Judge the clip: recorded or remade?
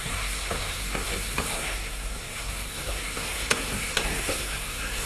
remade